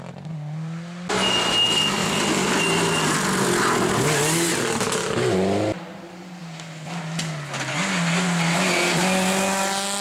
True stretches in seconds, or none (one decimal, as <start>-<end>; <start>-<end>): 0.0-10.0